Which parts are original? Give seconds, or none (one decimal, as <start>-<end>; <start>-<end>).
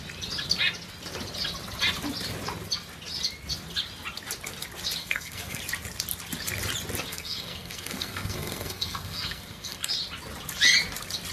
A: 0.0-5.0; 5.6-7.1; 9.9-11.3